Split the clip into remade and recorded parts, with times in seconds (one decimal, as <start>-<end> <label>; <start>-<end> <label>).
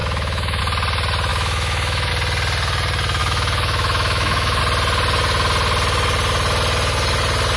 0.0-0.6 remade; 0.6-1.3 recorded; 1.3-2.1 remade; 2.1-3.2 recorded; 3.2-4.6 remade; 4.6-7.6 recorded